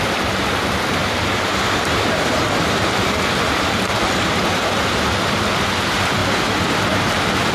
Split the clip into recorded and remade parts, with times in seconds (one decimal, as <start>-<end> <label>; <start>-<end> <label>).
0.0-6.2 remade; 6.2-7.5 recorded